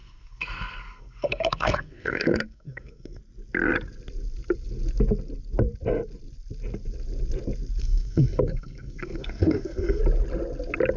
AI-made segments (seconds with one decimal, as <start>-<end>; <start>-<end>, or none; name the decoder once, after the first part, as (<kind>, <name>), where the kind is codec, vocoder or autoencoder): 0.0-3.2 (codec, SNAC); 7.8-10.0